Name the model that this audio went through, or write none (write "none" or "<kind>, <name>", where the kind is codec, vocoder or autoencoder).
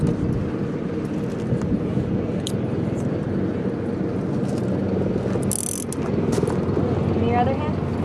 none